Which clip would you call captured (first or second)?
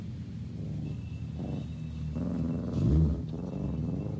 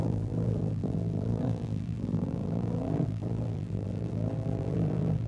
first